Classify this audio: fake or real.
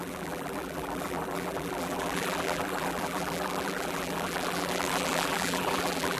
fake